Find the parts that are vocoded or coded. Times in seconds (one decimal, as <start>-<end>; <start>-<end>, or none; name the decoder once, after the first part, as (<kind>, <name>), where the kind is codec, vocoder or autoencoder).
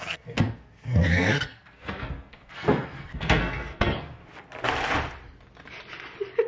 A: 0.0-4.2 (codec, SNAC)